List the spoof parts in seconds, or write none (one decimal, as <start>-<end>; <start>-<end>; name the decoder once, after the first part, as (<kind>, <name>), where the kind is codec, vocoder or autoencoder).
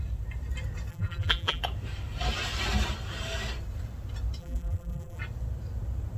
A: 0.9-1.6 (vocoder, BigVGAN v2); 4.4-5.2